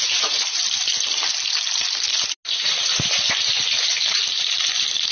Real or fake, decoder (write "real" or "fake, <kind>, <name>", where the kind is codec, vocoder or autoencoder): real